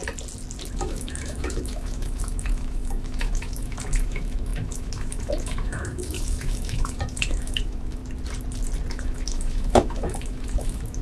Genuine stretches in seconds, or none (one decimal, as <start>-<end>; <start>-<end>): 0.0-0.7; 8.0-8.9